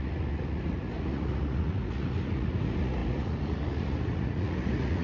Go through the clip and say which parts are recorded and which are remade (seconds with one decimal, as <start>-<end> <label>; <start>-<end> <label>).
0.0-5.0 remade